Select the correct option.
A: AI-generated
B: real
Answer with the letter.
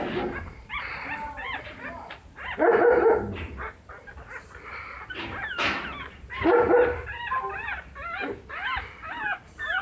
B